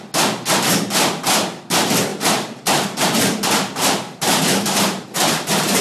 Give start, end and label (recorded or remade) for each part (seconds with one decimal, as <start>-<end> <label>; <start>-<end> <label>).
0.0-2.1 recorded; 2.1-5.8 remade